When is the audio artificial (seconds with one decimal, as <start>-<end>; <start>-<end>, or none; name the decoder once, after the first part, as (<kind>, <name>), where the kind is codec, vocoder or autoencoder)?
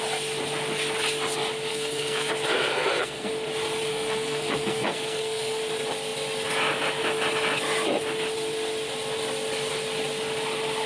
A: 1.7-2.3 (codec, SNAC); 2.7-3.3; 3.9-5.6